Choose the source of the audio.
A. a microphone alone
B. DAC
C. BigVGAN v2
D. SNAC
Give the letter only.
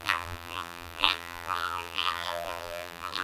C